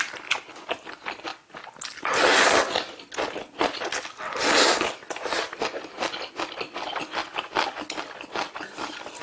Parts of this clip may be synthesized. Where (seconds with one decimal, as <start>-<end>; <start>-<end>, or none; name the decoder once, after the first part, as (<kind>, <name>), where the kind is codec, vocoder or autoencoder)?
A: 7.2-8.0 (vocoder, BigVGAN v2)